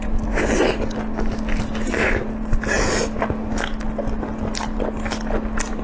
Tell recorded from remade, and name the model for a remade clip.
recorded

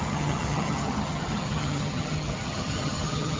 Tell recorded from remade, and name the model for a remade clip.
remade, vocoder, HiFi-GAN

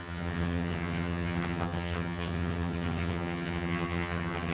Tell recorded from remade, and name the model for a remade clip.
remade, vocoder, HiFi-GAN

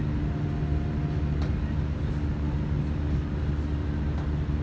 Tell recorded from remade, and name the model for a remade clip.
recorded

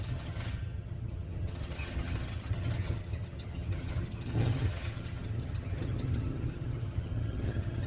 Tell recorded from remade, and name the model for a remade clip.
remade, vocoder, HiFi-GAN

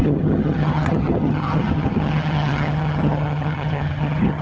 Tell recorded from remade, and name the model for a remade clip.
remade, vocoder, HiFi-GAN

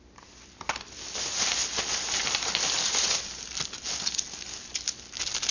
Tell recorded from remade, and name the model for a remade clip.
recorded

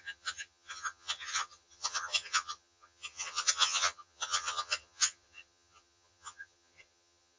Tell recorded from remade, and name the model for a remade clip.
remade, vocoder, HiFi-GAN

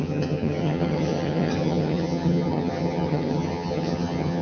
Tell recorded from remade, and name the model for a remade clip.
remade, vocoder, HiFi-GAN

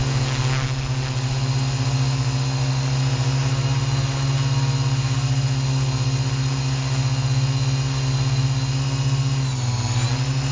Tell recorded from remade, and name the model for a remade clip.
recorded